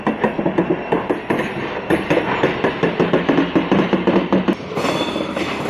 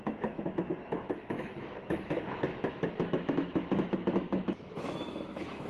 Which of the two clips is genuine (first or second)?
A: first